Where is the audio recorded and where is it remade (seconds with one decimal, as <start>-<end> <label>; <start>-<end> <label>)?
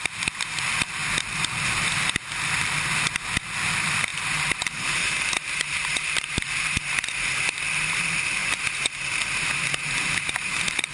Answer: 0.0-4.1 recorded; 4.1-7.4 remade; 7.4-8.4 recorded; 8.4-10.9 remade